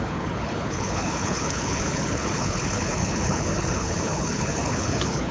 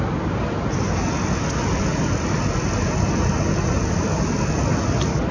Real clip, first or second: second